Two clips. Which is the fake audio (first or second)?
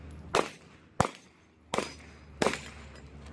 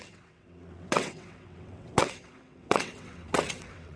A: second